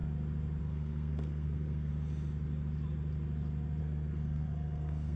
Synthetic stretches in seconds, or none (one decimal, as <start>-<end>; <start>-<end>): 0.6-1.9; 3.8-5.2